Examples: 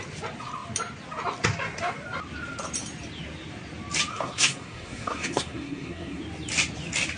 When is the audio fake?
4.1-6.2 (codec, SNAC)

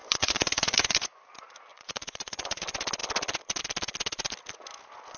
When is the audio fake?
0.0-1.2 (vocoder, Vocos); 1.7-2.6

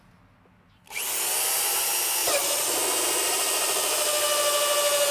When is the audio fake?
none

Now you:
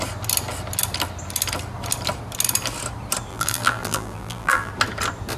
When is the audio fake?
3.3-4.7 (vocoder, BigVGAN v2)

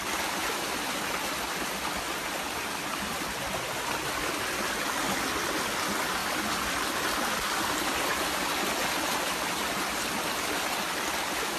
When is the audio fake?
none